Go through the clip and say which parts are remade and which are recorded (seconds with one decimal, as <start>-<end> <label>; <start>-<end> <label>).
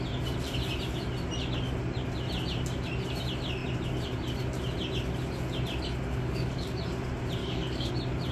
0.0-6.1 recorded; 6.1-6.8 remade; 6.8-7.4 recorded; 7.4-7.9 remade; 7.9-8.3 recorded